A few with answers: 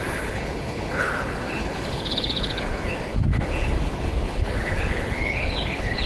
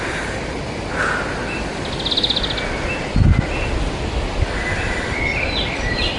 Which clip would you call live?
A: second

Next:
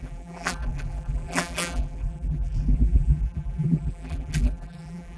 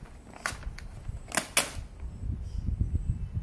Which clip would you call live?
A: second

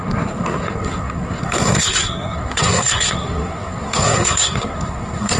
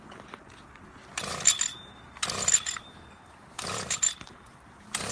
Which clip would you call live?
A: second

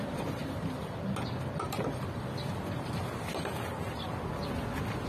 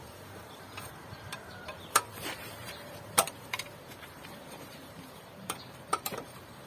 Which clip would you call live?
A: first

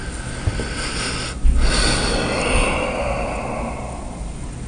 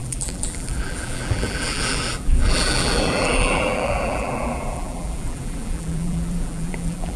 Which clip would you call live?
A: first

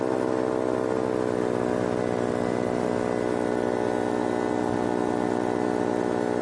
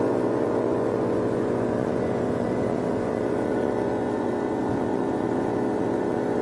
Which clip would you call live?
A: first